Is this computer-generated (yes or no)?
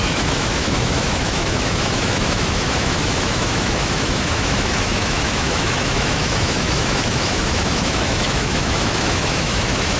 yes